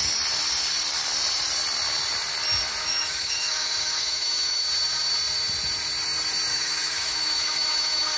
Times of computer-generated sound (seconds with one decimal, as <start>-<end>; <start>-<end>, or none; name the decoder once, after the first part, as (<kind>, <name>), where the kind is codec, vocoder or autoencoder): 2.8-4.6 (autoencoder, DAC-VAE); 6.5-8.2